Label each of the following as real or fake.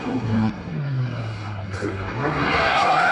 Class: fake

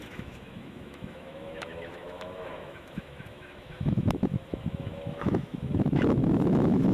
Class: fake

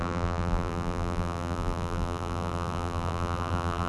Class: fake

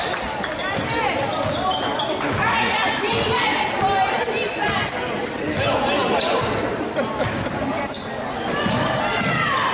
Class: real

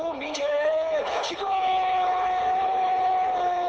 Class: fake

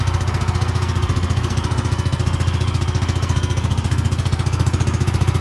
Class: fake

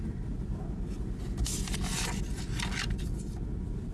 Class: real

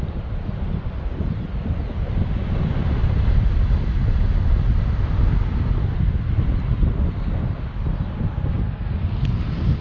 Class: real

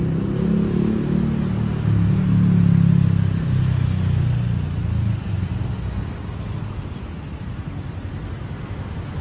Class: real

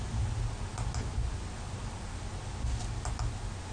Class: real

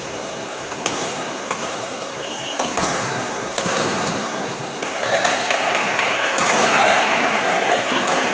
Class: fake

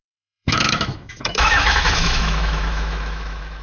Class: fake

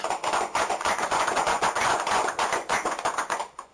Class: fake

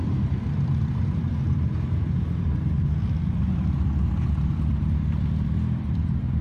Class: fake